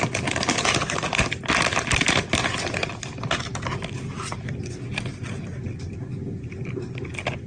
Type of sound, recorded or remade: recorded